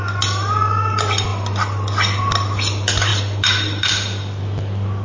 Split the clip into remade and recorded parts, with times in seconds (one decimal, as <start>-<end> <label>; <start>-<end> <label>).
0.0-5.0 recorded